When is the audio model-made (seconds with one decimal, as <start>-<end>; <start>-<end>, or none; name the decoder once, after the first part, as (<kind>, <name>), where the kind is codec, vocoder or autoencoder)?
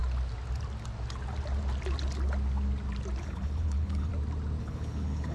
3.2-4.1 (codec, HILCodec); 4.6-5.3